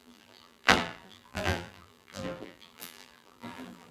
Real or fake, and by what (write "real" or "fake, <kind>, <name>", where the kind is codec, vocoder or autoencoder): fake, vocoder, BigVGAN v2